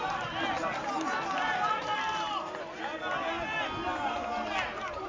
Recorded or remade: recorded